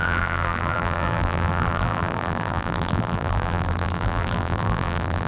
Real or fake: fake